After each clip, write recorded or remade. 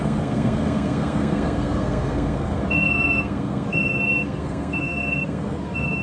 remade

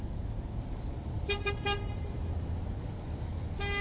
recorded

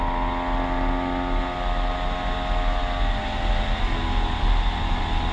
recorded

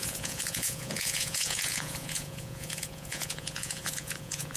remade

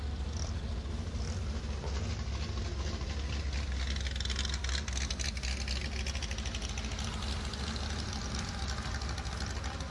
recorded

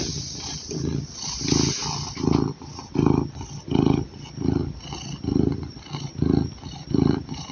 recorded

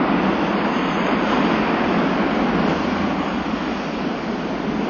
recorded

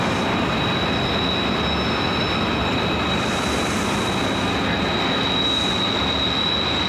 recorded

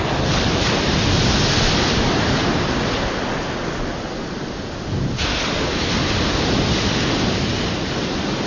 recorded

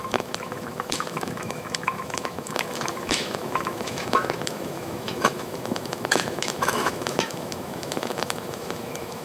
remade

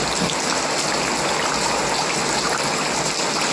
recorded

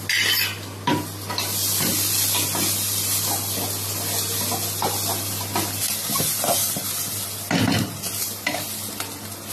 recorded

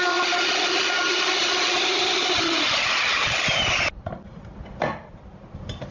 recorded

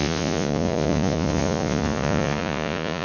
remade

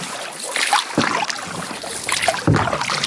recorded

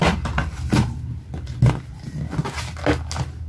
recorded